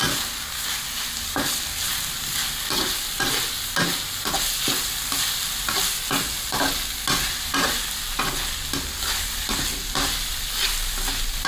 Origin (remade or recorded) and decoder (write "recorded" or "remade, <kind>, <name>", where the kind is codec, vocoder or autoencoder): recorded